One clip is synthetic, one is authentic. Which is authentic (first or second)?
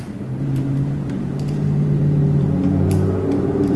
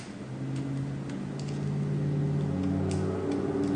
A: second